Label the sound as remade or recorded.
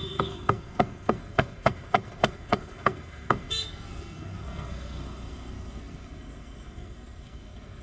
remade